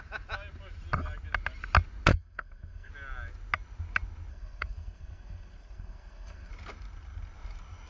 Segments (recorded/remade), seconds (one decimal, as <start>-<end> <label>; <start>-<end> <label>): 0.0-2.1 recorded; 2.1-2.9 remade; 2.9-4.3 recorded; 4.3-6.5 remade; 6.5-7.9 recorded